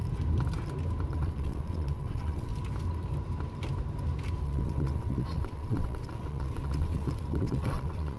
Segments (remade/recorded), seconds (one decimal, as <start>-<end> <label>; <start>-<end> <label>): 0.0-1.1 recorded; 1.1-2.5 remade; 2.5-4.4 recorded; 4.4-8.2 remade